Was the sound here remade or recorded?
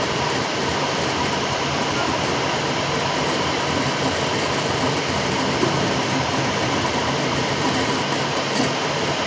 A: recorded